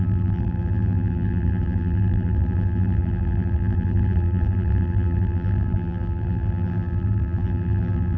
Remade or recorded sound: remade